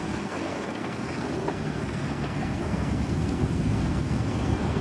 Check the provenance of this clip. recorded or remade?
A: remade